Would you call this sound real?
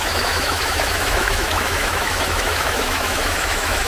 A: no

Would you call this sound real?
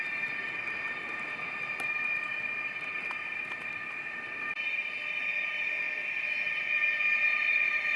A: yes